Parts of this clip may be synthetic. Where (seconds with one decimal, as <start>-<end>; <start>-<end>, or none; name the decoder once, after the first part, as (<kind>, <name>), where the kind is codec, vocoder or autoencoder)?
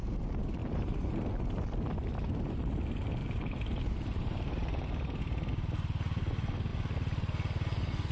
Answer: 0.6-1.3 (vocoder, BigVGAN v2); 3.2-5.2